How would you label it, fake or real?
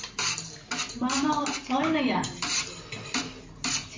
real